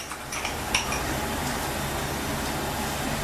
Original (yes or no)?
yes